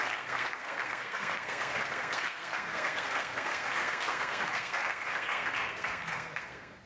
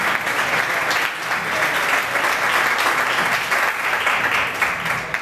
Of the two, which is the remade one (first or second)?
first